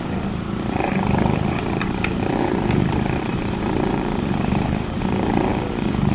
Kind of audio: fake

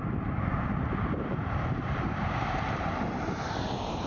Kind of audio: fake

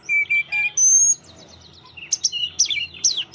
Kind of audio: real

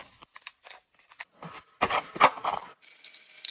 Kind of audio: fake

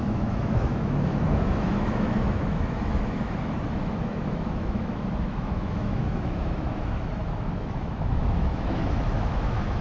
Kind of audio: fake